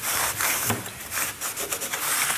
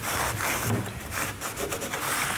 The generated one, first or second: first